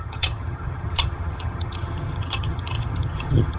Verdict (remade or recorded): remade